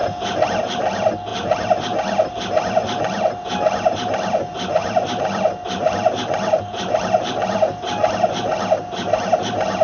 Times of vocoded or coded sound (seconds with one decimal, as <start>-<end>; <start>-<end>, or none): none